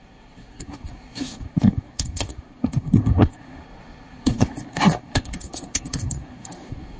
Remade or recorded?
remade